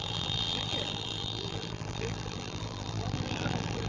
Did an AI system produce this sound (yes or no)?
yes